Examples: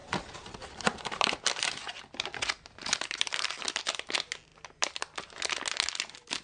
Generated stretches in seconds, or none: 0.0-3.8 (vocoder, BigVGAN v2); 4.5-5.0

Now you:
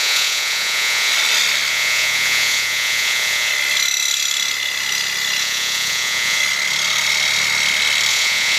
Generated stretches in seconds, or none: 0.0-1.1 (vocoder, Vocos); 1.7-3.5; 5.4-6.4; 8.1-8.6

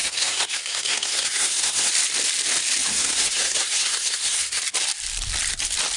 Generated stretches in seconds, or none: 0.0-1.9 (codec, SNAC); 2.9-4.6

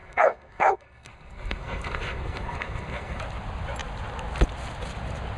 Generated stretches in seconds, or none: 0.0-3.2 (codec, SNAC)